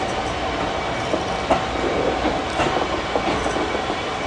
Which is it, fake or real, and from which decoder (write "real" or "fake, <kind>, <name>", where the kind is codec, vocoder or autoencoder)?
real